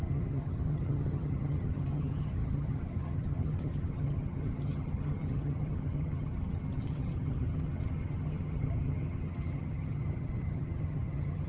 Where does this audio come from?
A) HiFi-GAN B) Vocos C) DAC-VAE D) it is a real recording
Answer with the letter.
A